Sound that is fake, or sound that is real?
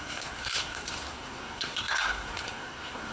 fake